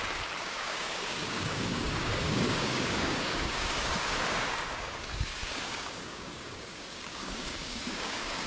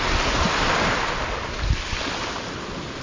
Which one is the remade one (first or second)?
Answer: first